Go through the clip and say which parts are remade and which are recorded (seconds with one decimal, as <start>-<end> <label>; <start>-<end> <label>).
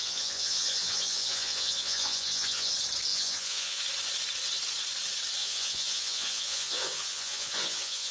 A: 0.0-2.7 remade; 2.7-3.1 recorded; 3.1-3.8 remade; 3.8-5.4 recorded; 5.4-8.1 remade